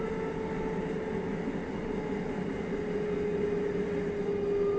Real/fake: real